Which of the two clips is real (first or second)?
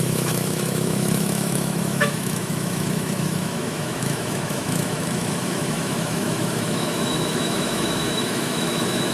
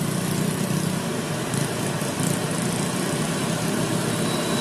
second